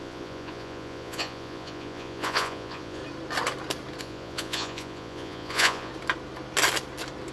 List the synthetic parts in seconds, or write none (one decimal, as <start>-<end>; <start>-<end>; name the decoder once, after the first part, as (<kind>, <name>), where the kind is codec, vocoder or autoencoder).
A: 0.0-3.0 (vocoder, Vocos); 4.0-5.9